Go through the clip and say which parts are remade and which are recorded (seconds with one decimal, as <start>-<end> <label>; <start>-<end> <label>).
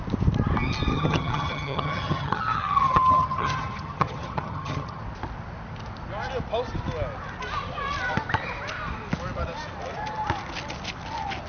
0.0-0.9 recorded; 0.9-5.0 remade; 5.0-11.5 recorded